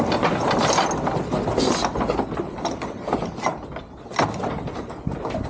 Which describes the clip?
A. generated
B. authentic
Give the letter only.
B